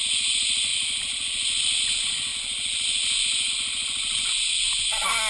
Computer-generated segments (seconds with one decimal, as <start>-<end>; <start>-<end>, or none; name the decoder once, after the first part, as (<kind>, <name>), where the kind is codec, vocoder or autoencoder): none